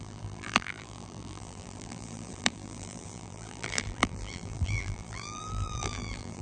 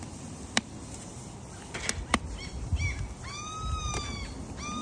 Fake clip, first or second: first